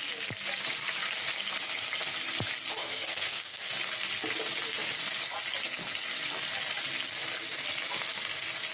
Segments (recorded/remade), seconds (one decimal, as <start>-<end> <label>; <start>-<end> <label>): 0.0-2.8 recorded; 2.8-3.7 remade; 3.7-8.7 recorded